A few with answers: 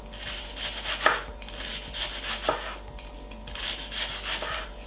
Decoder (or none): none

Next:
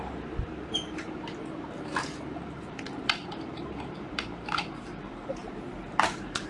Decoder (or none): vocoder, BigVGAN v2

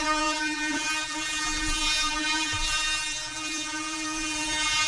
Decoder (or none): vocoder, BigVGAN v2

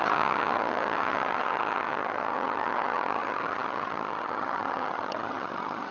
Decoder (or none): vocoder, HiFi-GAN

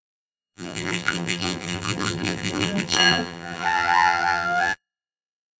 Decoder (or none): vocoder, BigVGAN v2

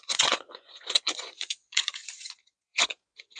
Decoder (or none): vocoder, Vocos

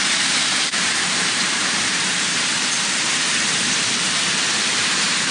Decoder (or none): vocoder, BigVGAN v2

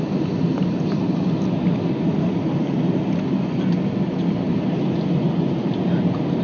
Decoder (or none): none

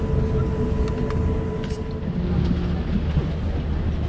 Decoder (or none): none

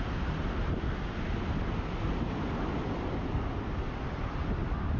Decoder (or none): none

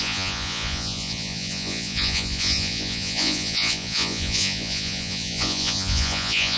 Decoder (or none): vocoder, Vocos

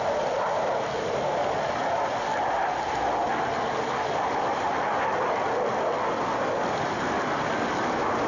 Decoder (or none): none